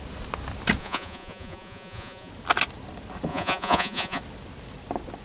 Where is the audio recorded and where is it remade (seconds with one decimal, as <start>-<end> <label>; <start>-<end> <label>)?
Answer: 0.0-0.8 recorded; 0.8-2.3 remade; 2.3-3.3 recorded; 3.3-4.2 remade; 4.2-5.2 recorded